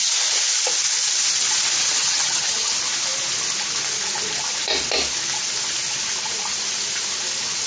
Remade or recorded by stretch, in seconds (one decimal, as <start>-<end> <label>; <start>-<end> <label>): 0.0-1.8 recorded; 1.8-2.7 remade; 2.7-7.7 recorded

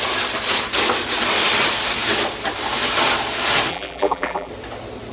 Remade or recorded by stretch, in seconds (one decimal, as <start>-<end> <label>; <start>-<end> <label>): 0.0-3.7 recorded; 3.7-4.5 remade; 4.5-5.1 recorded